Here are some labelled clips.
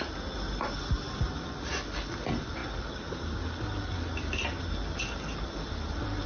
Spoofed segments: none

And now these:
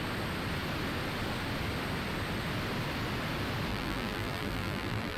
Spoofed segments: 3.7-5.2

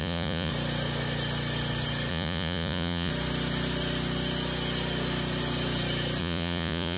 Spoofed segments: 0.0-0.5; 2.1-3.1; 6.2-7.0

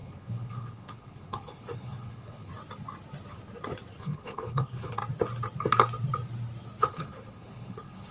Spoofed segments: 0.0-2.5; 4.0-5.0; 6.8-8.1